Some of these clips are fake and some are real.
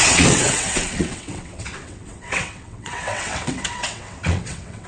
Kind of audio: fake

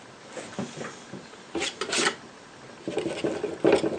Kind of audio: real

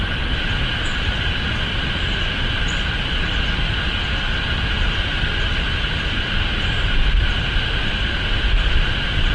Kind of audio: real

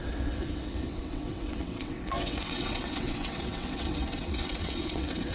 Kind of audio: fake